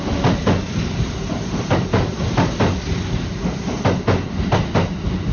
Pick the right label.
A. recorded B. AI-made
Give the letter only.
A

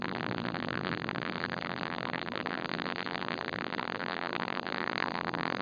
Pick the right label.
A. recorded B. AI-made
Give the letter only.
B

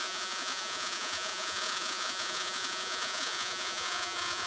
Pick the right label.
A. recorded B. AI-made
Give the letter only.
B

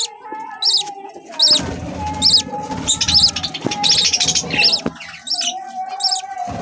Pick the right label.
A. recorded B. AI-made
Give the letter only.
A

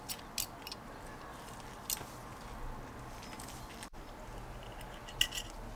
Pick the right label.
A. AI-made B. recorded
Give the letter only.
B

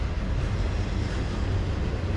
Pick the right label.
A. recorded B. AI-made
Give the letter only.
A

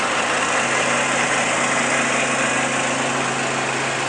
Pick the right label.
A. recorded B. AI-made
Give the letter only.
A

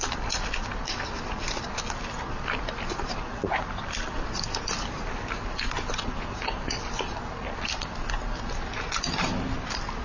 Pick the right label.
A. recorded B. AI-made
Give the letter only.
A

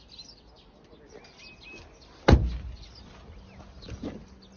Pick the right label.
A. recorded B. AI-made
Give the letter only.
A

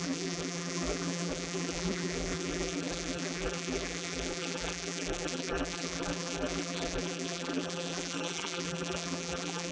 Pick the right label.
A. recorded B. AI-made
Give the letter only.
B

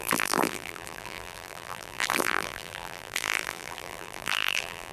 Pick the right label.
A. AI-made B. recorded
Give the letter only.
A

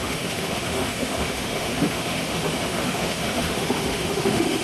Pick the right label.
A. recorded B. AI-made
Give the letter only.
B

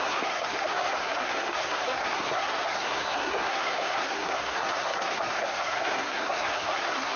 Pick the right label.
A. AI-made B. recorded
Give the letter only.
A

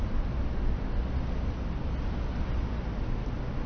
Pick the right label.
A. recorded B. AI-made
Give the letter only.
A